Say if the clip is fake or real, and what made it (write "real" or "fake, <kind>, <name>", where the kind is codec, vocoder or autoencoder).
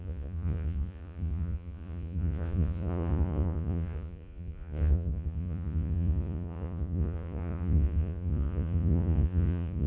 fake, vocoder, Vocos